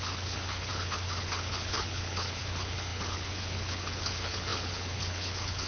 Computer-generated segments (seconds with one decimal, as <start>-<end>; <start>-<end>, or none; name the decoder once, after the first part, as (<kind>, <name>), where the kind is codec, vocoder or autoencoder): 0.0-5.7 (codec, HILCodec)